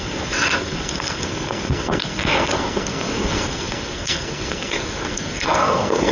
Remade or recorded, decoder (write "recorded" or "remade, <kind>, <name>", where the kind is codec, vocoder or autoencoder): remade, codec, SNAC